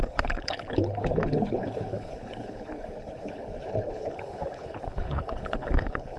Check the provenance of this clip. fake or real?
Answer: fake